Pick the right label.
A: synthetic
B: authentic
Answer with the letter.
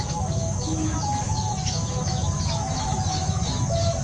A